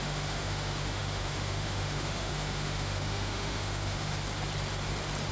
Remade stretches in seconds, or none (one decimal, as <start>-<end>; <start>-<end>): 0.0-4.1